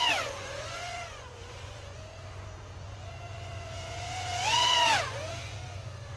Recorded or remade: remade